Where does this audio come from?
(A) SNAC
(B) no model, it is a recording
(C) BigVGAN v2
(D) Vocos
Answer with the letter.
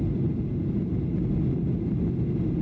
B